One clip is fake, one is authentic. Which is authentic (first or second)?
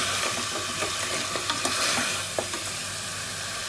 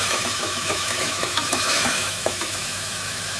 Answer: first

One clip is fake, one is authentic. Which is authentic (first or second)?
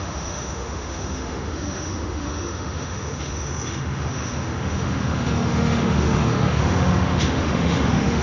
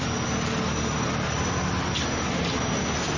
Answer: second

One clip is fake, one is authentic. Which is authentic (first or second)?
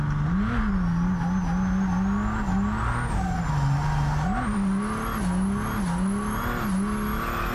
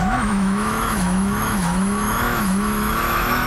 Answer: first